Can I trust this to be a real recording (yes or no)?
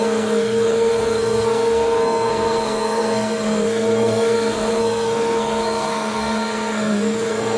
no